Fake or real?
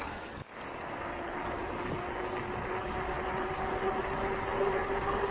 real